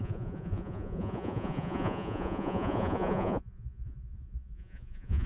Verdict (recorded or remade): remade